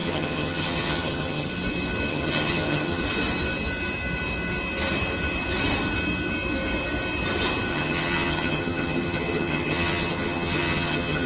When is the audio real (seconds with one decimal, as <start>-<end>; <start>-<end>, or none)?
1.5-2.1; 3.0-7.7